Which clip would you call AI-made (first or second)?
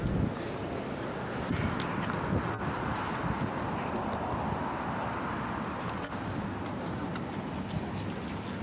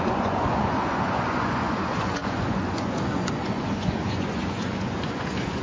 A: second